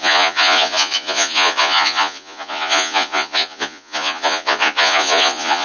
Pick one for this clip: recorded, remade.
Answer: remade